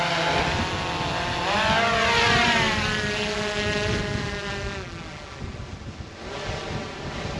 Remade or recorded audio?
recorded